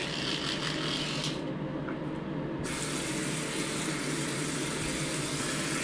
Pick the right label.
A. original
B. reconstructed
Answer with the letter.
A